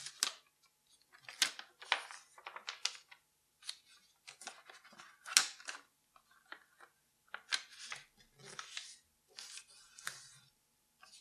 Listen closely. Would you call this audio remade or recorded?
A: recorded